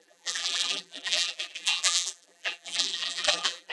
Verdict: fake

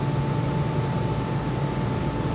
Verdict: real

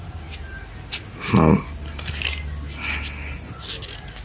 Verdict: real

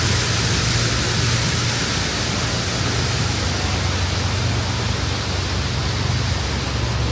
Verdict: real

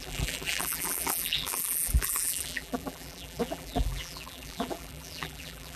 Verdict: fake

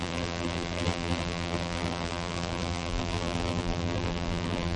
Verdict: fake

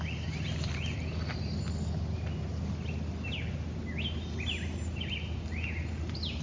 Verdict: real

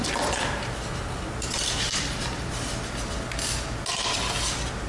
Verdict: real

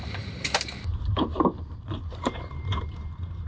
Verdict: fake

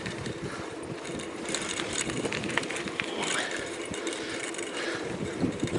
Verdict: fake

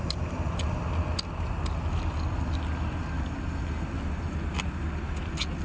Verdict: real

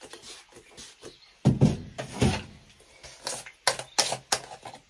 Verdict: real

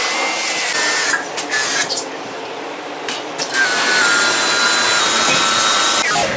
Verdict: real